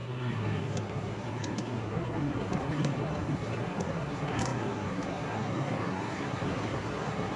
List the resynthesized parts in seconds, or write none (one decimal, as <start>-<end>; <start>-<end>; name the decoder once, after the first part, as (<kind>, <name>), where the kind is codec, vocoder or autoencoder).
0.0-7.4 (codec, SNAC)